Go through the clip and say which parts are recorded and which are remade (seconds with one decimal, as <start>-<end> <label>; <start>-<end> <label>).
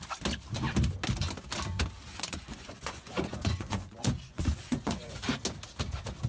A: 0.0-2.1 recorded; 2.1-5.2 remade; 5.2-6.3 recorded